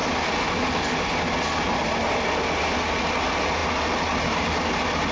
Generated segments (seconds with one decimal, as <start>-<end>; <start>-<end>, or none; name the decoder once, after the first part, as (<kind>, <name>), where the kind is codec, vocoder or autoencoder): none